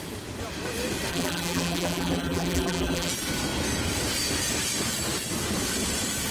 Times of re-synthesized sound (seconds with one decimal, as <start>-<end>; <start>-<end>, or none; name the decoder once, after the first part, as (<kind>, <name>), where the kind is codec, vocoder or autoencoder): 1.1-3.1 (vocoder, BigVGAN v2)